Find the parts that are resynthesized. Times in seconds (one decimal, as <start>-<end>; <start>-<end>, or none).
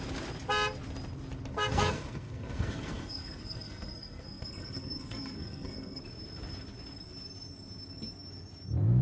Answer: 1.5-6.0